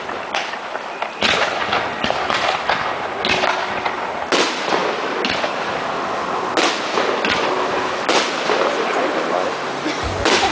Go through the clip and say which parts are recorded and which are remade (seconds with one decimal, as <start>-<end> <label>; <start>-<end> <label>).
0.0-10.5 recorded